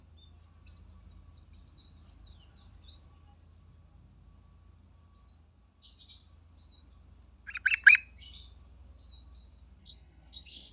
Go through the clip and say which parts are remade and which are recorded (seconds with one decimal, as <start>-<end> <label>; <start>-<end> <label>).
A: 0.0-9.8 recorded; 9.8-10.7 remade

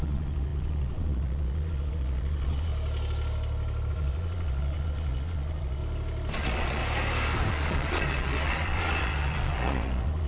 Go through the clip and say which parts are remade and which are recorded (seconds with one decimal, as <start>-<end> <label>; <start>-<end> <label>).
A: 0.0-2.7 remade; 2.7-3.9 recorded; 3.9-5.8 remade; 5.8-6.3 recorded; 6.3-6.8 remade; 6.8-7.5 recorded; 7.5-10.3 remade

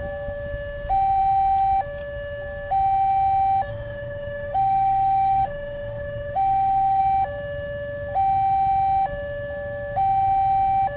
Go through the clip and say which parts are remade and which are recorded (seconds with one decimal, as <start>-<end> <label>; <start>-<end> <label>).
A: 0.0-3.7 recorded; 3.7-7.0 remade; 7.0-11.0 recorded

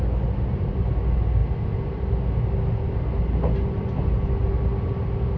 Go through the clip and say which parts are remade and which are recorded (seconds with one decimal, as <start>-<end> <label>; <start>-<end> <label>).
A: 0.0-5.4 recorded

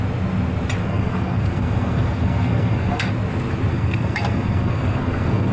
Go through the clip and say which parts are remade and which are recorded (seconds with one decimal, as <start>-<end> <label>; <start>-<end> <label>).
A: 0.0-0.8 recorded; 0.8-3.1 remade; 3.1-3.7 recorded; 3.7-5.5 remade

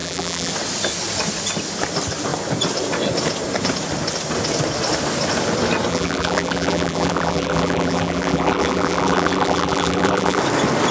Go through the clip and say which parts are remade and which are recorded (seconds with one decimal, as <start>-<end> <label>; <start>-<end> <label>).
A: 0.0-0.5 remade; 0.5-5.9 recorded; 5.9-10.4 remade; 10.4-10.9 recorded